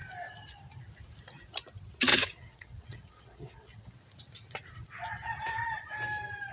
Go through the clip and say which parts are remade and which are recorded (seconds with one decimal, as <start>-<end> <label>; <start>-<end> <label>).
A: 0.0-2.1 recorded; 2.1-3.9 remade; 3.9-6.5 recorded